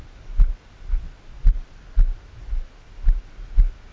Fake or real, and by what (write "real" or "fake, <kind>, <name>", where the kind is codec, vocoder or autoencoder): real